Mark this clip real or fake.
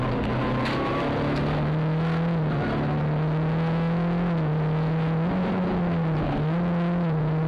real